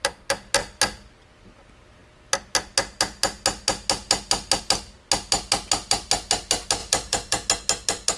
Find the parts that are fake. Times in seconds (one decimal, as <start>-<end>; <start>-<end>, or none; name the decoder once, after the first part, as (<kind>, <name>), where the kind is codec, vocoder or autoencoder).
6.8-7.5 (vocoder, BigVGAN v2)

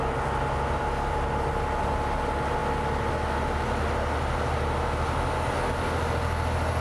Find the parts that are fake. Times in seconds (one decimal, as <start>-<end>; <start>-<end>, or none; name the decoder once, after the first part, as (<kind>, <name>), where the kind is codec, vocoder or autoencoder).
none

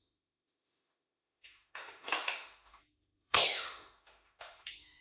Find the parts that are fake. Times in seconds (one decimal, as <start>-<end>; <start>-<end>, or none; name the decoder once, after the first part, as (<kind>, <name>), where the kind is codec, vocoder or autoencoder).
0.0-5.0 (autoencoder, DAC-VAE)

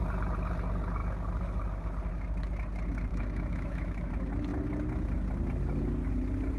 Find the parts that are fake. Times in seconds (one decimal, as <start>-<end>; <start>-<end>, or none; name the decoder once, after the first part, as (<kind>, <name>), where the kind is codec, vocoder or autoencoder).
3.1-4.1 (autoencoder, DAC-VAE)

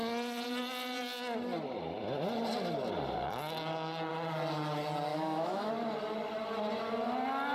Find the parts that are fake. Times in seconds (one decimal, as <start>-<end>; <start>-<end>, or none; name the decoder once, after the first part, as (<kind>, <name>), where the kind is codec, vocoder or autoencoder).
5.1-5.7 (autoencoder, DAC-VAE)